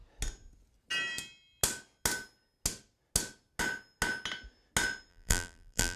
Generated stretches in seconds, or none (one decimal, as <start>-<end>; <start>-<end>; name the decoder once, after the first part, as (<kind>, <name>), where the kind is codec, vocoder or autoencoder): 5.1-6.0 (vocoder, BigVGAN v2)